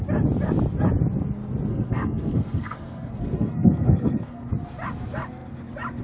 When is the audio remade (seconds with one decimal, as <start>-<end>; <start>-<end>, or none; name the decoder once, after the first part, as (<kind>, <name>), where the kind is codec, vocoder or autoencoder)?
1.7-4.5 (codec, SNAC)